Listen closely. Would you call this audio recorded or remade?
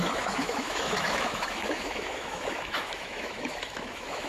remade